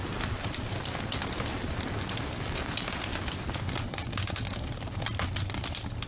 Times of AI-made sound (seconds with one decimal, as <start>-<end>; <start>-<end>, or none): none